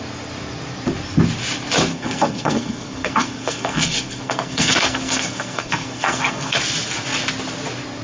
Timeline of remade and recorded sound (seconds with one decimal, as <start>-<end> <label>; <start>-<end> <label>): 0.0-1.9 recorded; 1.9-6.6 remade; 6.6-8.0 recorded